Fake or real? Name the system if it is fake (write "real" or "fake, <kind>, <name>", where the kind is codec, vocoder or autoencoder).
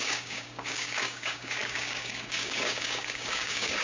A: fake, codec, DAC